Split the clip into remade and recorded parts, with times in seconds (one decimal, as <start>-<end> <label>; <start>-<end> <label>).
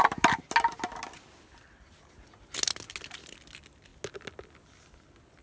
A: 0.0-5.4 recorded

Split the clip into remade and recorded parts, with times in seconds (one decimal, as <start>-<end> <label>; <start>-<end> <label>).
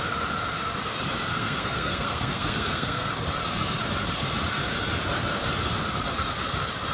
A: 0.0-1.3 recorded; 1.3-3.1 remade; 3.1-6.9 recorded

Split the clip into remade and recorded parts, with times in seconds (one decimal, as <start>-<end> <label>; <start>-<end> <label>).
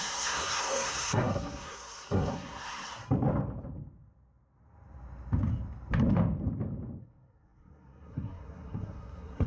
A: 0.0-2.9 remade; 2.9-7.0 recorded; 7.0-9.5 remade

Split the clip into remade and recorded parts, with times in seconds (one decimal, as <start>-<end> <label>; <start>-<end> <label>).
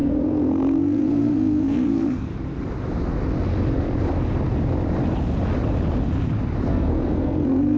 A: 0.0-2.3 remade; 2.3-6.7 recorded; 6.7-7.8 remade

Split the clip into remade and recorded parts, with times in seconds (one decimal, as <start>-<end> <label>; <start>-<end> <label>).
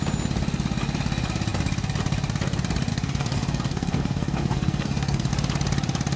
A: 0.0-2.9 recorded; 2.9-5.3 remade; 5.3-6.2 recorded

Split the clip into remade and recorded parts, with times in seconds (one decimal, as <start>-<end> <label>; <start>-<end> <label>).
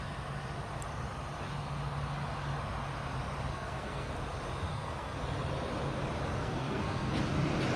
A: 0.0-3.5 recorded; 3.5-4.1 remade; 4.1-4.7 recorded; 4.7-5.2 remade; 5.2-6.4 recorded; 6.4-7.2 remade; 7.2-7.8 recorded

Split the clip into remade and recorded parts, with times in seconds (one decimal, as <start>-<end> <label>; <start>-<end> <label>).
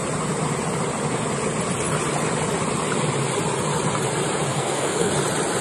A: 0.0-4.5 recorded; 4.5-5.1 remade; 5.1-5.6 recorded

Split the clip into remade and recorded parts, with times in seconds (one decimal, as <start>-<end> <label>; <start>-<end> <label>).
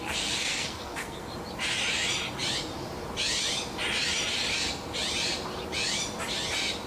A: 0.0-1.3 remade; 1.3-6.9 recorded